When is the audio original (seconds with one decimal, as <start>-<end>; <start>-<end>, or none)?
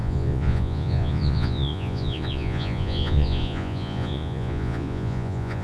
none